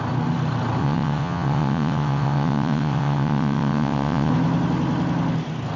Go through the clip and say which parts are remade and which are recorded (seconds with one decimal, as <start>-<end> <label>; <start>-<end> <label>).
0.0-0.8 recorded; 0.8-4.3 remade; 4.3-5.8 recorded